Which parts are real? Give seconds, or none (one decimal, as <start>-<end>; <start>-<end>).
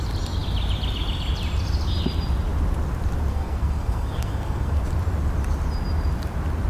0.0-3.3; 4.8-6.7